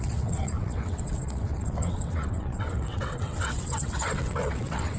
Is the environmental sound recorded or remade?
remade